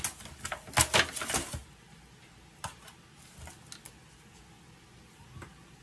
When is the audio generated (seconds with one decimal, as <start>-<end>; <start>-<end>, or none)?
none